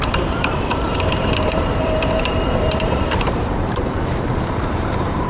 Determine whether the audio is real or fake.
fake